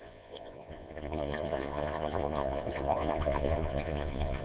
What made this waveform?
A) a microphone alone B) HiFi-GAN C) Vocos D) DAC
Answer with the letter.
C